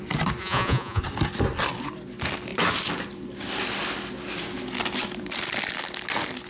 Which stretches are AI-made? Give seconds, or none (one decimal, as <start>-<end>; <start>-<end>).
0.4-1.0